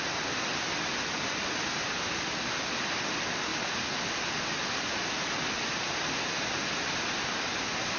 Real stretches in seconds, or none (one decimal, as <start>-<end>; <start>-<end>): 0.0-8.0